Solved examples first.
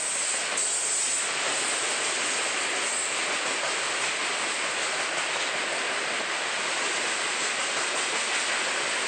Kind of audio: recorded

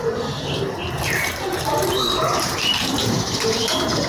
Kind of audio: remade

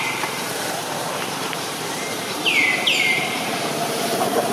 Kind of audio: remade